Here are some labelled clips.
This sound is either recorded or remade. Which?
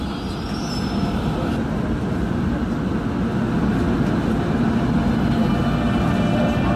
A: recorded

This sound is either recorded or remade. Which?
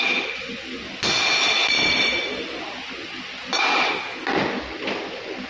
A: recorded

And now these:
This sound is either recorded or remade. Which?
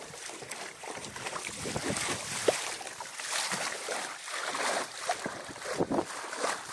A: remade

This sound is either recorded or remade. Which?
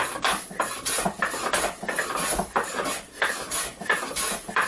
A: recorded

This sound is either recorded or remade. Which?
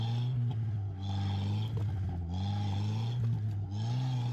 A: recorded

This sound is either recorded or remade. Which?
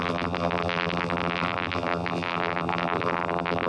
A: remade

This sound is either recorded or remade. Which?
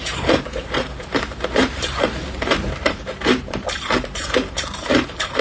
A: remade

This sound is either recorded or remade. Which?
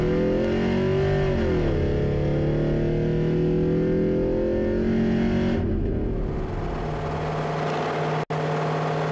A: recorded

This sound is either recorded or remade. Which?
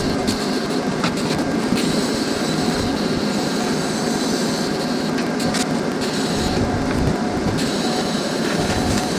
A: recorded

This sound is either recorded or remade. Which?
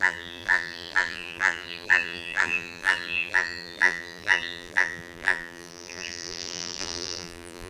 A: remade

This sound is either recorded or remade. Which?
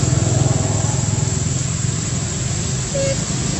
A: recorded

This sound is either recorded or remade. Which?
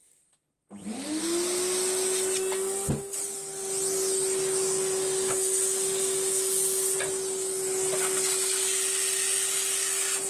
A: recorded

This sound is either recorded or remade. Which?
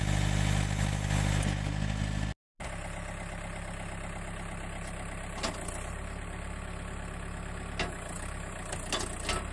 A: recorded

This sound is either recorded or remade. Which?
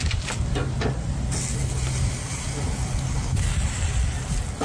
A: recorded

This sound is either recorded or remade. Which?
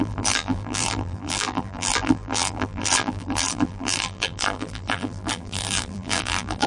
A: remade